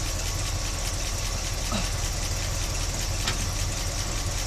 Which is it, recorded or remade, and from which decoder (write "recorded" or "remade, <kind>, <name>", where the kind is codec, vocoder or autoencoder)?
recorded